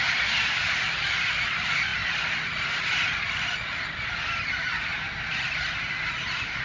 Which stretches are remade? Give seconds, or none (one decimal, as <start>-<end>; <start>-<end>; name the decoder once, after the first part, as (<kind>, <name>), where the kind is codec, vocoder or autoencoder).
none